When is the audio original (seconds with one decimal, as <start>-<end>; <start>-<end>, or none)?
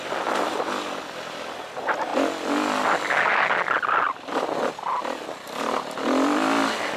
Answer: 0.0-7.0